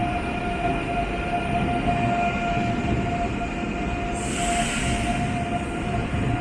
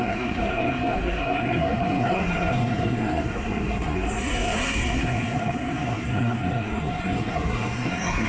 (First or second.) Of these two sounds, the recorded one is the first